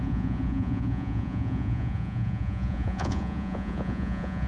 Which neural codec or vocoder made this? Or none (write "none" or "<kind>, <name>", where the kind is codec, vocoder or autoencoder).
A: vocoder, Vocos